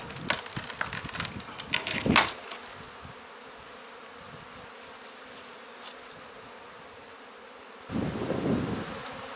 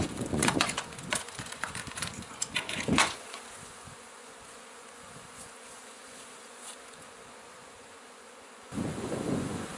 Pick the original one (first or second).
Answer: first